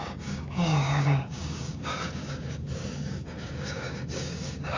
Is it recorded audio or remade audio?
remade